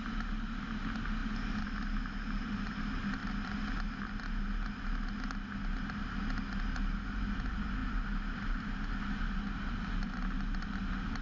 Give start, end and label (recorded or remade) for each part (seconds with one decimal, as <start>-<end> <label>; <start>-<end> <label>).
0.0-11.2 recorded